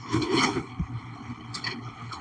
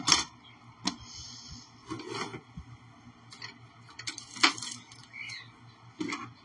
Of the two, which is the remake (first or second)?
first